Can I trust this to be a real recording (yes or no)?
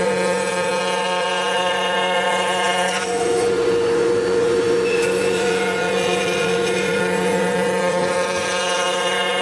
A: no